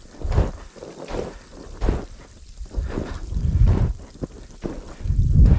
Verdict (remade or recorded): recorded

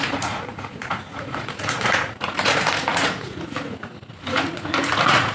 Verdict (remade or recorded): remade